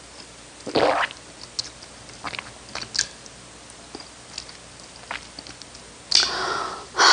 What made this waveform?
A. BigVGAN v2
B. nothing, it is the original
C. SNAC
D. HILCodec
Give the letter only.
B